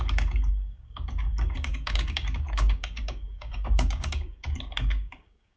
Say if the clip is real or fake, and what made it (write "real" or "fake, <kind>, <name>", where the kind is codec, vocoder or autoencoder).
fake, codec, DAC